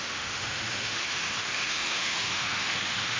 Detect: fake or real fake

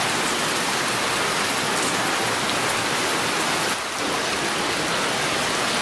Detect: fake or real real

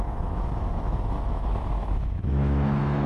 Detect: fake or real fake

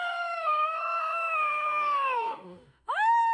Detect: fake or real fake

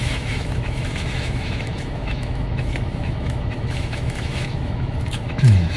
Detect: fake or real fake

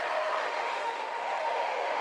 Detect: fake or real fake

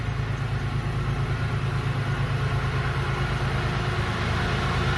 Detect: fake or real real